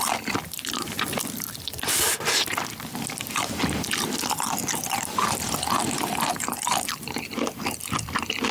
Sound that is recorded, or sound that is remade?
remade